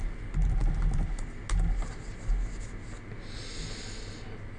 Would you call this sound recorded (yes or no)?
yes